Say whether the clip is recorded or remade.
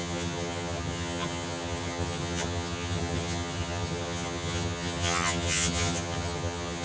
remade